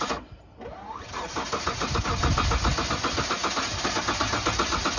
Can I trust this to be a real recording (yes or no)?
yes